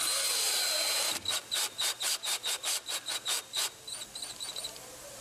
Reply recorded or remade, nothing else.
recorded